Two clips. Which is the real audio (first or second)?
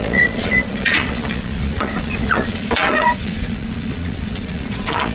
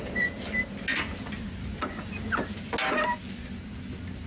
second